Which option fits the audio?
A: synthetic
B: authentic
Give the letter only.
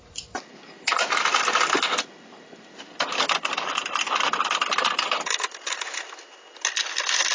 B